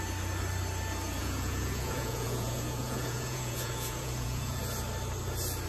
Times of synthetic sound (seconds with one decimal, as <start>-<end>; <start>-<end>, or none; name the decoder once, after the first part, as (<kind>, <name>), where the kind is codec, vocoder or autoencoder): 1.2-4.6 (vocoder, Vocos)